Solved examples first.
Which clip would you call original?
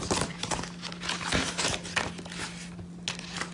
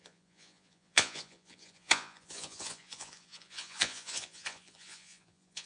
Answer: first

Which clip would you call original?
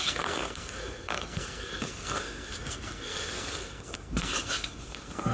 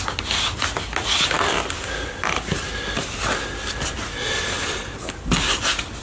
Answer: second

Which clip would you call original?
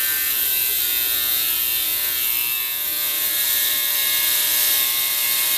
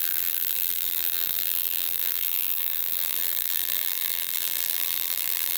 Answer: first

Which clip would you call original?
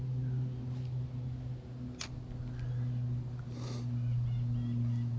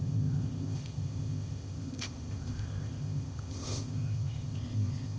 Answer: first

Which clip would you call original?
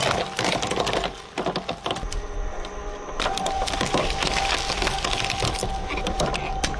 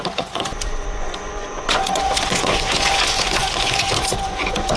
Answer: first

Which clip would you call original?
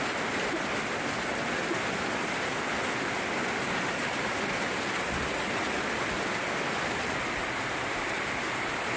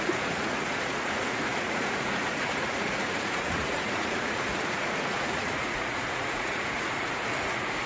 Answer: first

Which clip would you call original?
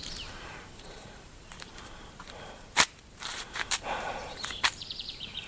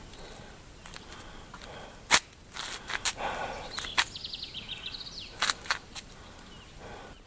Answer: second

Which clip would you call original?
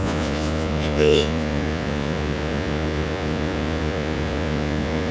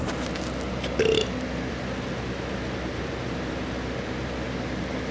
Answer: second